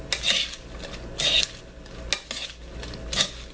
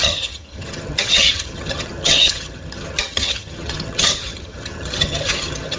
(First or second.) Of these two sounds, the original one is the first